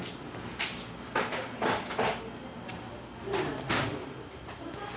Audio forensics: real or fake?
real